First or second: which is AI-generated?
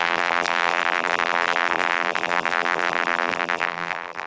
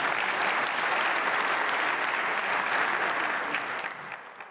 first